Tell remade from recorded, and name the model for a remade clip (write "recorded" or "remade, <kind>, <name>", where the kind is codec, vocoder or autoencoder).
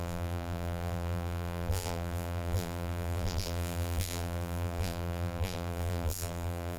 remade, vocoder, BigVGAN v2